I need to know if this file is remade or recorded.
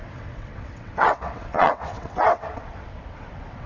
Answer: remade